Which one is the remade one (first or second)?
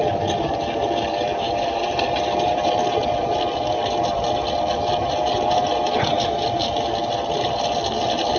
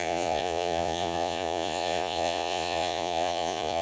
second